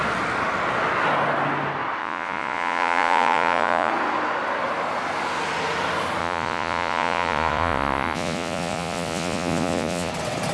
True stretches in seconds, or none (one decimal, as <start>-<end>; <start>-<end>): 0.0-2.0; 3.9-6.2; 10.1-10.5